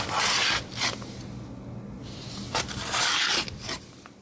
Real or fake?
real